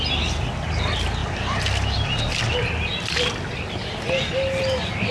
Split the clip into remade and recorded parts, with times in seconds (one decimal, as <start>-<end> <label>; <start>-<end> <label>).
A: 0.0-5.1 recorded

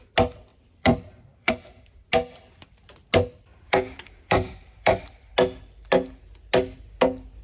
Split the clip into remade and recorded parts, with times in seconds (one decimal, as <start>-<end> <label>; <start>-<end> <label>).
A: 0.0-0.5 recorded; 0.5-1.5 remade; 1.5-3.5 recorded; 3.5-5.0 remade; 5.0-7.4 recorded

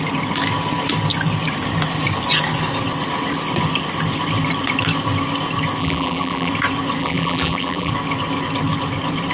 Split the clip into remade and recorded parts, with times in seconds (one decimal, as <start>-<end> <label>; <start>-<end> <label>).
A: 0.0-5.8 recorded; 5.8-6.5 remade; 6.5-7.0 recorded; 7.0-7.9 remade; 7.9-9.3 recorded

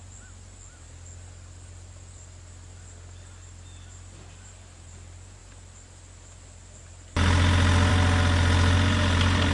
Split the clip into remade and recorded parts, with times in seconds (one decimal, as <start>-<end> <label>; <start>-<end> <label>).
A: 0.0-9.5 recorded

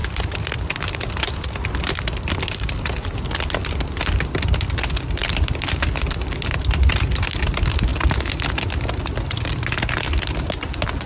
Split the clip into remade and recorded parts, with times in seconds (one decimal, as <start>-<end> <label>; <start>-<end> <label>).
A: 0.0-11.1 recorded

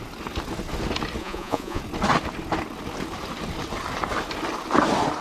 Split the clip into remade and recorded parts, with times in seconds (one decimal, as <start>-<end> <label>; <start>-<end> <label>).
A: 0.0-1.2 recorded; 1.2-1.8 remade; 1.8-5.2 recorded

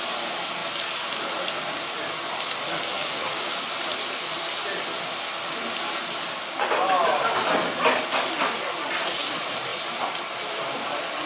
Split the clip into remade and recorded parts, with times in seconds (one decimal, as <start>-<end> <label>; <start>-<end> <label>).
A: 0.0-2.9 recorded; 2.9-3.6 remade; 3.6-11.3 recorded

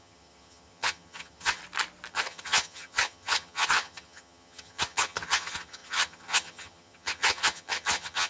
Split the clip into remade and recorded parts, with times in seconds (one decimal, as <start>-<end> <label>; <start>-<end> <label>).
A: 0.0-1.6 remade; 1.6-2.1 recorded; 2.1-8.3 remade